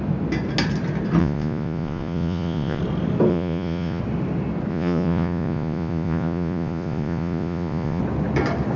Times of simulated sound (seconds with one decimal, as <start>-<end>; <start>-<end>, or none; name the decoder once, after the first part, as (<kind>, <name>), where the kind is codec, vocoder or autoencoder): 1.2-2.8 (vocoder, Vocos); 3.3-4.0; 4.7-8.0